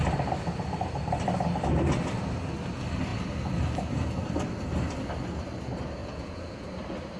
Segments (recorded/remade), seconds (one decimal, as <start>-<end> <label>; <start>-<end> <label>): 0.0-6.0 recorded; 6.0-6.7 remade; 6.7-7.2 recorded